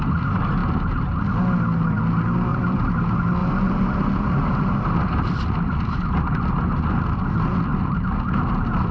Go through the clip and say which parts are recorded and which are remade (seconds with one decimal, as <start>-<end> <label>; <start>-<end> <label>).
0.0-2.5 recorded; 2.5-3.0 remade; 3.0-3.4 recorded; 3.4-6.7 remade; 6.7-7.7 recorded; 7.7-8.5 remade; 8.5-8.9 recorded